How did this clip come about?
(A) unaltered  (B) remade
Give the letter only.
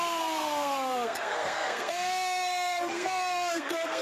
B